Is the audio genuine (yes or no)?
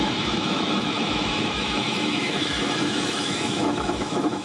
no